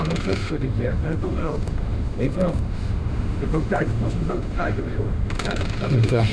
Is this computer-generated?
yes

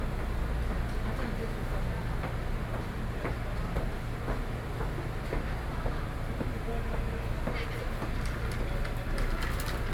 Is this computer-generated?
no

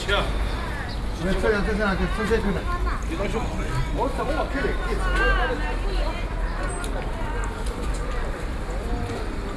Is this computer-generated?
no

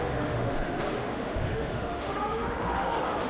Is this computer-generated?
yes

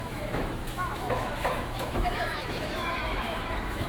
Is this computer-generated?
yes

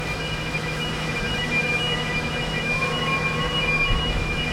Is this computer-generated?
yes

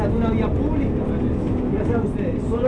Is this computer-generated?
no